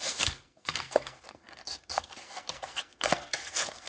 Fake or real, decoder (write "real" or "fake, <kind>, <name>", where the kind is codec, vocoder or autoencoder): fake, codec, SNAC